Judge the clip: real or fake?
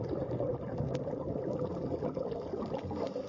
fake